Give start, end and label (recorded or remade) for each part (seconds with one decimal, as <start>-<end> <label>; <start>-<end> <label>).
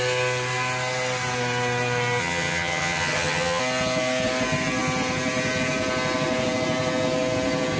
0.0-2.2 recorded; 2.2-3.6 remade; 3.6-7.8 recorded